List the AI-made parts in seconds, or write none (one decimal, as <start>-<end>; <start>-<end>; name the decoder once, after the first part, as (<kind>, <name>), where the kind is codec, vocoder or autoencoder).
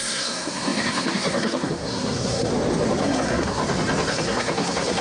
0.0-2.5 (codec, SNAC); 3.0-3.6; 4.1-5.0